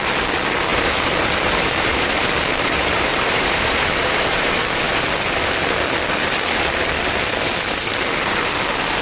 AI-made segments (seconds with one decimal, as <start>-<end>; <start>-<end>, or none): 0.7-4.6